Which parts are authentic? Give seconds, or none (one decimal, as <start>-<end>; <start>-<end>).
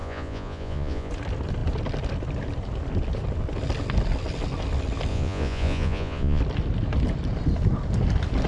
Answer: 1.1-5.1; 6.4-8.5